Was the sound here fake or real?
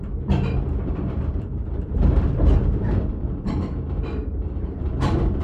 fake